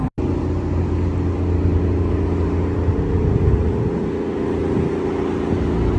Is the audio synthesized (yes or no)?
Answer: no